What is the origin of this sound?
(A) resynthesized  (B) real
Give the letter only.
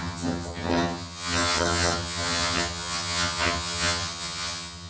A